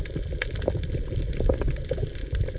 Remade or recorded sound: recorded